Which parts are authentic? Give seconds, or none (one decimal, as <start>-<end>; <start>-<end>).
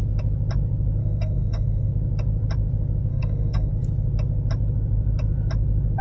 0.0-1.0; 1.9-3.1; 3.7-6.0